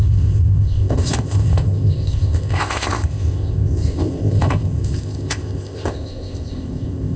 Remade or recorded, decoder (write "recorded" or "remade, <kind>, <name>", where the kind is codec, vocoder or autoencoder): remade, codec, ZipCodec